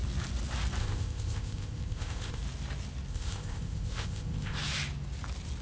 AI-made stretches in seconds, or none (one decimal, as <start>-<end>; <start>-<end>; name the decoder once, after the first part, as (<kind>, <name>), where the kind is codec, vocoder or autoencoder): 0.8-2.4 (codec, ZipCodec); 3.1-4.6